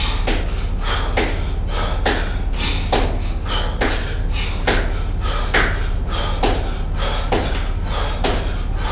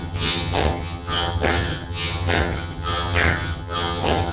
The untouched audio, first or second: first